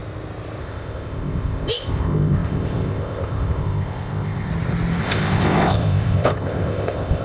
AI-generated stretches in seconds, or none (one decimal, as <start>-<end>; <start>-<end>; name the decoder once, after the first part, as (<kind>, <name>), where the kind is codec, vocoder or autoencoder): 0.6-4.5 (codec, ZipCodec); 5.0-7.2